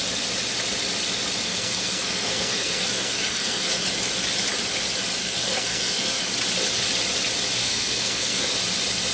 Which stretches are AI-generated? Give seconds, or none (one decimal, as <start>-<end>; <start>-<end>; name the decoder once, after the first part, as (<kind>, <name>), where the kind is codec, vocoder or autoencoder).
1.5-3.8 (codec, SNAC); 5.2-6.2; 7.6-8.5